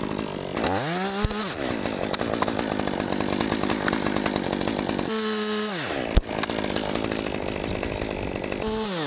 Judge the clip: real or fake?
real